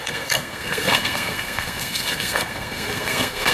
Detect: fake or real fake